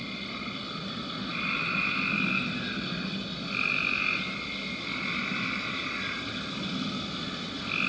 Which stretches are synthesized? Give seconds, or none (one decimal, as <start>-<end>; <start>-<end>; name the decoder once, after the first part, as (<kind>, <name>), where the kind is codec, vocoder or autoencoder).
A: none